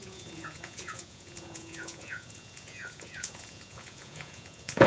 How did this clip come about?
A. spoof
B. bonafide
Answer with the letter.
A